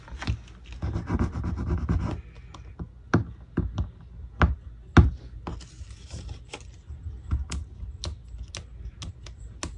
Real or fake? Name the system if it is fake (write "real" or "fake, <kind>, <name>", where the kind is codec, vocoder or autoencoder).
real